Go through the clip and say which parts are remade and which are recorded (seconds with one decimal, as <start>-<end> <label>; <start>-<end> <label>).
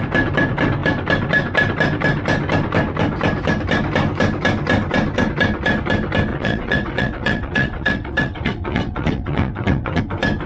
0.0-6.3 recorded; 6.3-10.0 remade; 10.0-10.5 recorded